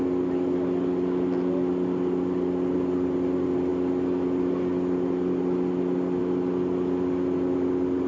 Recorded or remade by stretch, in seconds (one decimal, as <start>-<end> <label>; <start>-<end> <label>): 0.0-8.1 recorded